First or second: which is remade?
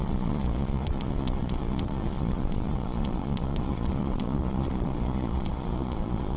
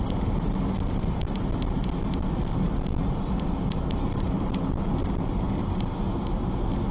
first